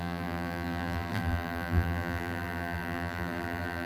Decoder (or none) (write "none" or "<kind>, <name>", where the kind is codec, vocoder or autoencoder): vocoder, BigVGAN v2